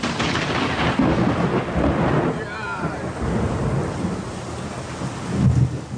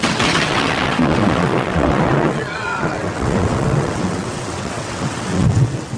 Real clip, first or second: first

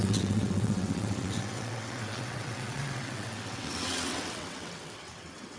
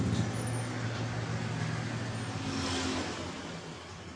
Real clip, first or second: second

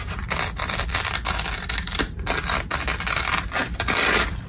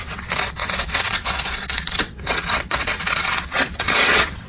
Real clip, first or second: first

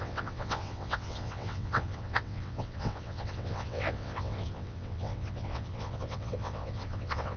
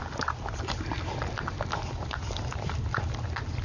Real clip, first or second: second